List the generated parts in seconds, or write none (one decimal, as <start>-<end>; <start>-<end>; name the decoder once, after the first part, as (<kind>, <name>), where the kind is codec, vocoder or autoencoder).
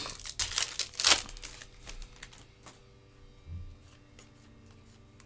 none